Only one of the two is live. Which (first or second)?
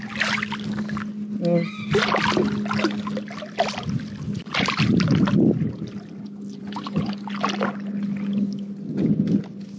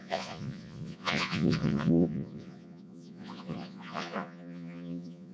first